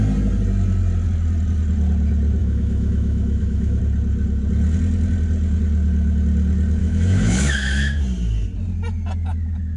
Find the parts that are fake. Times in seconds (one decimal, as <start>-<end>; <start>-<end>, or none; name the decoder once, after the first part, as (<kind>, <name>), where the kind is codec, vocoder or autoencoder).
2.4-3.8 (autoencoder, DAC-VAE); 6.8-8.0